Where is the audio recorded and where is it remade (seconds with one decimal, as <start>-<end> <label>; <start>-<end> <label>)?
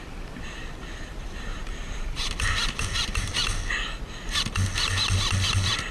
0.0-1.5 recorded; 1.5-3.3 remade; 3.3-5.9 recorded